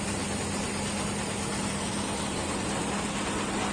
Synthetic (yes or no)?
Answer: no